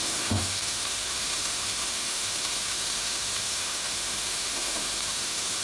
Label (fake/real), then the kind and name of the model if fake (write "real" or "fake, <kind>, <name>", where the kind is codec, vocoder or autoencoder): fake, autoencoder, DAC-VAE